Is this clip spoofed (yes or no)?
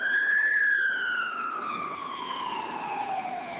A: yes